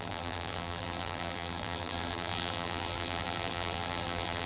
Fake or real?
fake